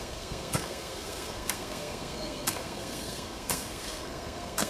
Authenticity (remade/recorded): remade